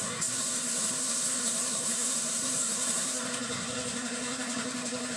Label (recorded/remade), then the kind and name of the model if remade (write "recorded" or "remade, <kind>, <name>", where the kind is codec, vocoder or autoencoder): remade, codec, SNAC